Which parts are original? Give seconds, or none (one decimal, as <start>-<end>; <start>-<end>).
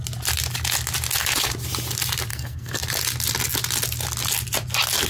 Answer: 0.0-2.3; 2.8-5.1